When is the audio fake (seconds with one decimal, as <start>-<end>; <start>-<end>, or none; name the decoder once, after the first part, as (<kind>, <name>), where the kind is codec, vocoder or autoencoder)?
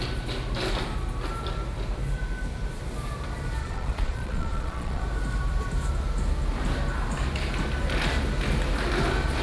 3.6-5.0 (vocoder, Vocos)